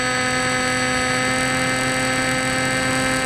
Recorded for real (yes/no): yes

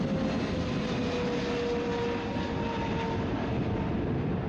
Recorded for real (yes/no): yes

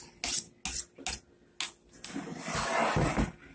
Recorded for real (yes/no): yes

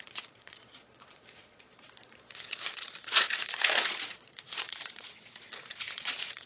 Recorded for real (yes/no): no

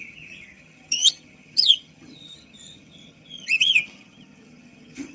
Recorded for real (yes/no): no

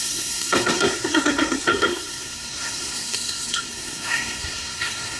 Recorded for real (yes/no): no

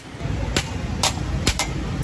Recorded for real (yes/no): yes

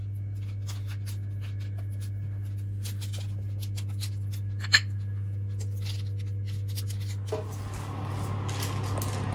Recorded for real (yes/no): yes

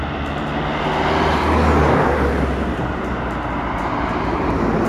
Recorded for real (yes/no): yes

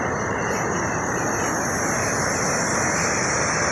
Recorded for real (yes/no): yes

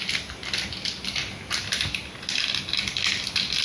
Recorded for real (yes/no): yes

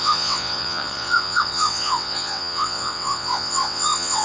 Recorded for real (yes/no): no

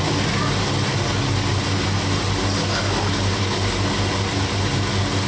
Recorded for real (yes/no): yes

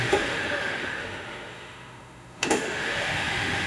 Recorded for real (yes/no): no